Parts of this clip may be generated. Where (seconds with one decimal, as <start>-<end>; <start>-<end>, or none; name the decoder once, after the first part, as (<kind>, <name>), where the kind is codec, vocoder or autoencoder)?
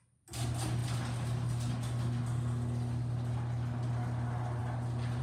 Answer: none